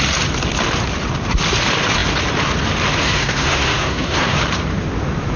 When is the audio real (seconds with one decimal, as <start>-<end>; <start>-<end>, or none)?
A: 0.0-3.0; 4.4-5.4